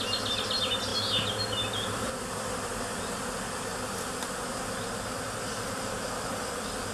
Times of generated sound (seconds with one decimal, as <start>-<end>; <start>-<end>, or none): none